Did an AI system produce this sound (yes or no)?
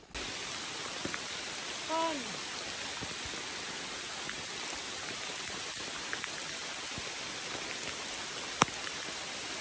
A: no